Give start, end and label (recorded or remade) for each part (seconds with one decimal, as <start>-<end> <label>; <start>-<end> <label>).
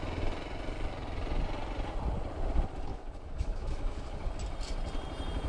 0.0-2.9 recorded; 2.9-4.3 remade; 4.3-5.5 recorded